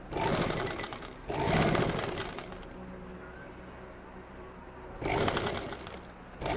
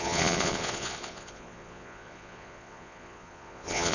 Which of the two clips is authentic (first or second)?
first